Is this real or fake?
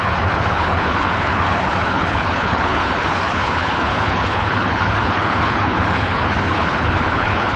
fake